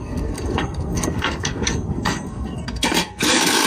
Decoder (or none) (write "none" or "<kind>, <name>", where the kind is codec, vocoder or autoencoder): codec, SNAC